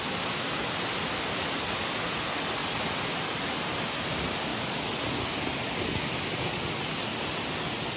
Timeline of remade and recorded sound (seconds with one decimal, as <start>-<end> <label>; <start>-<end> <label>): 0.0-8.0 recorded